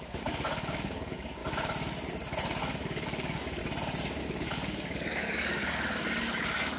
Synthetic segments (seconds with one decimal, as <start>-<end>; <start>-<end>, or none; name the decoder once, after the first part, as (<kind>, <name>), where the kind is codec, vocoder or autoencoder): 0.0-1.4 (codec, DAC); 2.6-3.6; 4.2-5.6; 6.2-6.8